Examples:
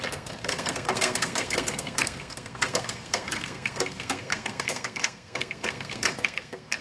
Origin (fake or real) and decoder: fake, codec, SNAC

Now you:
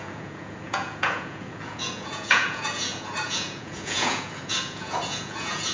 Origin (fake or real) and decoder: fake, vocoder, Vocos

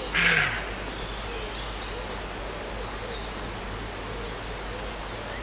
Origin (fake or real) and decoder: real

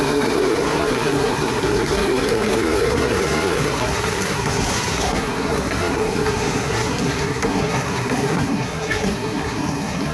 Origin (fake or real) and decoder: fake, codec, SNAC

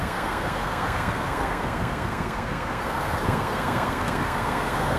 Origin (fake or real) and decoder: fake, codec, SNAC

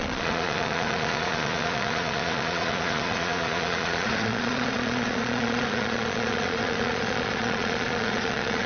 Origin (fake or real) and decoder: fake, vocoder, Vocos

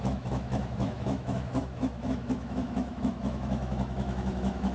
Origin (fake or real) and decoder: fake, autoencoder, DAC-VAE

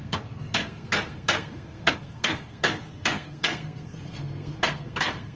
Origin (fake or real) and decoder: fake, codec, SNAC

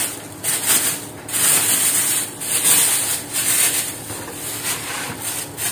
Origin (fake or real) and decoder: real